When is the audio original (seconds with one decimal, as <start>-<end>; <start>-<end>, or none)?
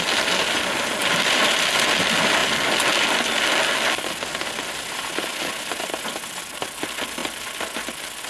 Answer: 0.0-1.0; 1.9-8.3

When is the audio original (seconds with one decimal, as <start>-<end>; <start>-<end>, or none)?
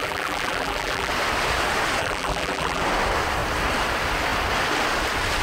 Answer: 1.1-2.0; 2.8-5.4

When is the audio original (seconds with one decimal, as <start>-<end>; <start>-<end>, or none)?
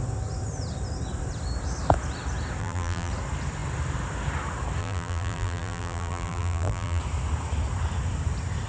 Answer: 0.0-2.6; 3.1-4.8; 7.0-8.7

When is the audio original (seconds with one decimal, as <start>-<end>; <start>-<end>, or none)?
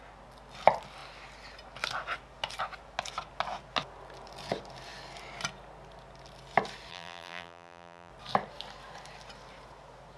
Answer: 0.0-6.9; 8.1-10.2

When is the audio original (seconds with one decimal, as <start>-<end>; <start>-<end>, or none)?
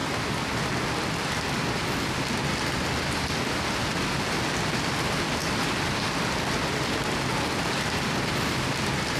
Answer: 0.0-9.2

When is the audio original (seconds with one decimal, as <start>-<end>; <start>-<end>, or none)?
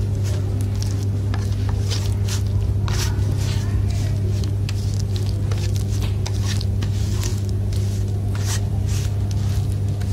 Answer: 0.0-10.1